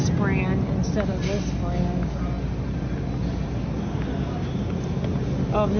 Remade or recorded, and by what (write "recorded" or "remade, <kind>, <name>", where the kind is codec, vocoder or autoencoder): recorded